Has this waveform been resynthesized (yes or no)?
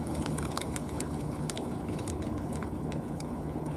yes